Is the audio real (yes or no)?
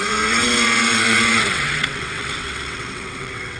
no